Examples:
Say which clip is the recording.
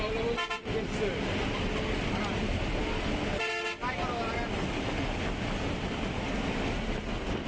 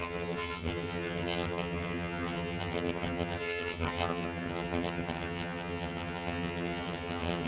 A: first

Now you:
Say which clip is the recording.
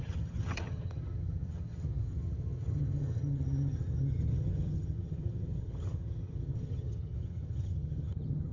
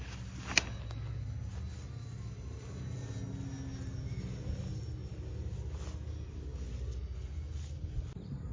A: second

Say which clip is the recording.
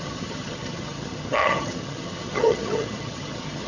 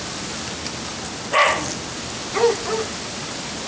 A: second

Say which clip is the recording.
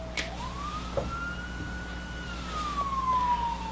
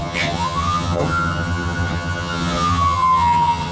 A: first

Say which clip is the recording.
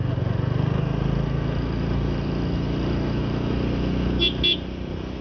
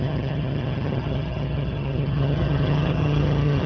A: first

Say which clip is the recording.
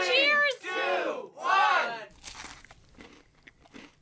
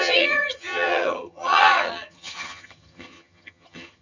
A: first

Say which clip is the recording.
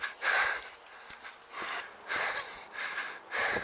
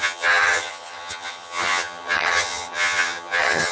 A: first